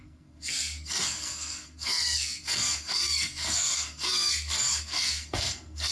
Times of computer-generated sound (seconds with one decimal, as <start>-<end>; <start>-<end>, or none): 0.0-5.9